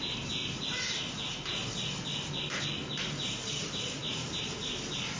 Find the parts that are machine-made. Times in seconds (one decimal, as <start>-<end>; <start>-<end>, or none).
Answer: 4.0-4.7